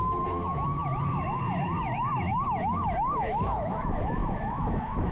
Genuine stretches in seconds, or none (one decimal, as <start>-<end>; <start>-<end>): none